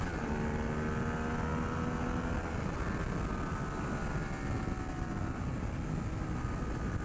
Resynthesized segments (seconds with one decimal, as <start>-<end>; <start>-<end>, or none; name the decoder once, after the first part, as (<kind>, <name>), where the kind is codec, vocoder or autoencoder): none

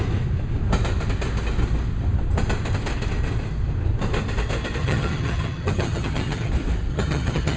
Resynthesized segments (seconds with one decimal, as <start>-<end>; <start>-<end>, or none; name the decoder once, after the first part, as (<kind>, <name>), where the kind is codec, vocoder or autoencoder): 4.8-6.5 (vocoder, HiFi-GAN); 6.9-7.6

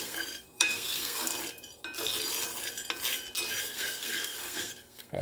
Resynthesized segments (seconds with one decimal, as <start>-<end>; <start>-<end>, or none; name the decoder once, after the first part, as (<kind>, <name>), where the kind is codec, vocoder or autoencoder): 0.0-1.3 (codec, SNAC); 3.6-5.2

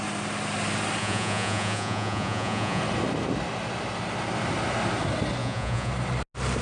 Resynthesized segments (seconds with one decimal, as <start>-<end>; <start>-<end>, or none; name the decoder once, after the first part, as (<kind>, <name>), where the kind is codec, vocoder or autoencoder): 1.0-2.8 (vocoder, Vocos); 5.4-5.9

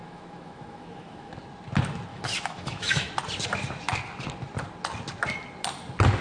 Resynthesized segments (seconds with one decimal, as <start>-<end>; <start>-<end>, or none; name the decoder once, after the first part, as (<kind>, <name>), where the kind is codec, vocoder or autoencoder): 0.0-1.3 (autoencoder, DAC-VAE); 2.1-3.1